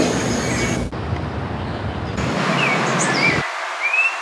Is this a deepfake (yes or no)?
no